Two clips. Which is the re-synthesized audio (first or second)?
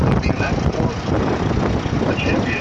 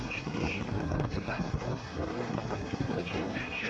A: second